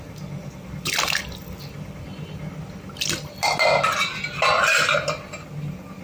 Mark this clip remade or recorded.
recorded